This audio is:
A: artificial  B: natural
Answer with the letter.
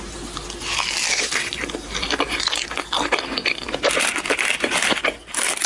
B